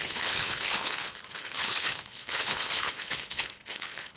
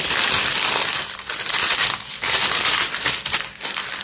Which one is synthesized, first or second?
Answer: first